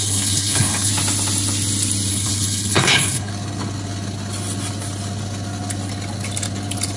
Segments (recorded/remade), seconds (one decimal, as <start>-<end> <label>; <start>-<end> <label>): 0.0-0.9 remade; 0.9-2.1 recorded; 2.1-3.3 remade; 3.3-7.0 recorded

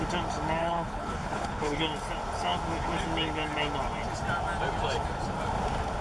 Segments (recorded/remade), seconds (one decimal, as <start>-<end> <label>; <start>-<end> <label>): 0.0-0.6 recorded; 0.6-1.8 remade; 1.8-6.0 recorded